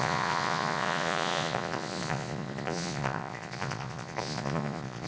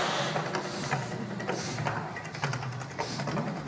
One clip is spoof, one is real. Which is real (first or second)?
second